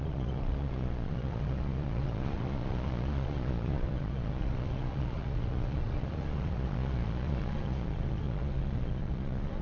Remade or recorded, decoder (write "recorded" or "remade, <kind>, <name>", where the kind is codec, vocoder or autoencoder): remade, vocoder, Vocos